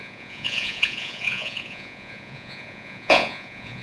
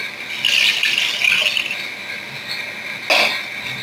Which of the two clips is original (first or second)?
second